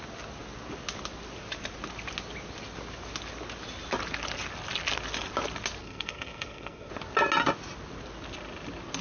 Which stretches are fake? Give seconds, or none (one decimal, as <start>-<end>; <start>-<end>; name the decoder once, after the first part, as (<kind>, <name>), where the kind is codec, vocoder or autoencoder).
5.8-6.9 (codec, SNAC)